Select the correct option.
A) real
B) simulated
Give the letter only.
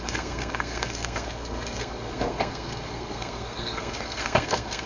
B